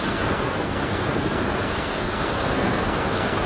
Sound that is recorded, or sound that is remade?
remade